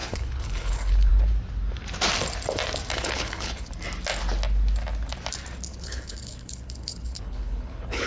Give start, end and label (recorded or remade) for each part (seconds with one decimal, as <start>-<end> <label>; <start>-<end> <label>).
0.0-1.1 remade; 1.1-2.9 recorded; 2.9-3.7 remade; 3.7-5.7 recorded; 5.7-8.1 remade